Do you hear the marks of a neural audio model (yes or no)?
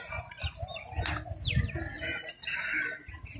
no